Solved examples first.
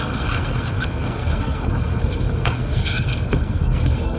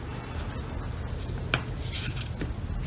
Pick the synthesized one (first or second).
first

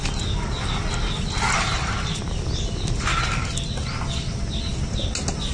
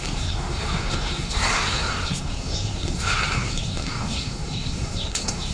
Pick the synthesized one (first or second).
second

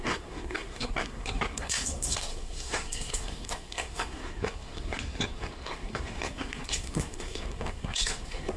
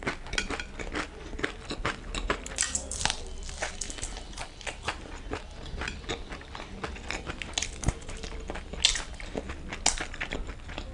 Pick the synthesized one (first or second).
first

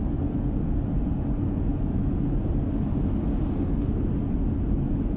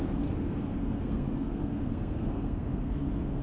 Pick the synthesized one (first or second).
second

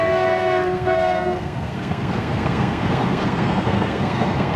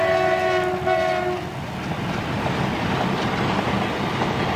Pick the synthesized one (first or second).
first